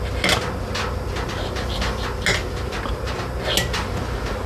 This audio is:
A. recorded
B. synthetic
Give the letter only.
A